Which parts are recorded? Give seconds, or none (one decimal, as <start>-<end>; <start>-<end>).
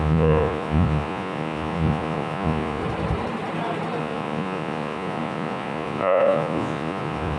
2.8-4.0